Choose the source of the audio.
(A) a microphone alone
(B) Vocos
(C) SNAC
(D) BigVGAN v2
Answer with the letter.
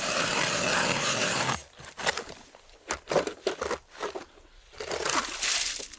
A